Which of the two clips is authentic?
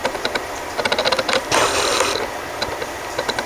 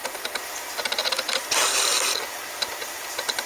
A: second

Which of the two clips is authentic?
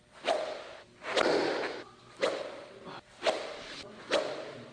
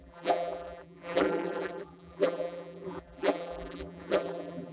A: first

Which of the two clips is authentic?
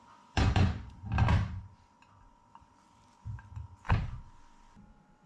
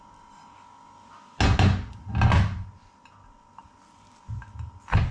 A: second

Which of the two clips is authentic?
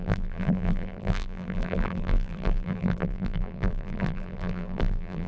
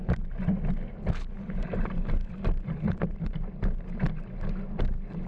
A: second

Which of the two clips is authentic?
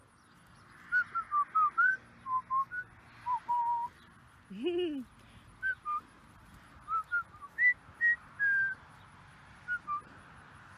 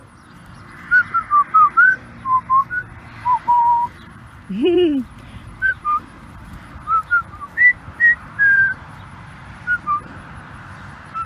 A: first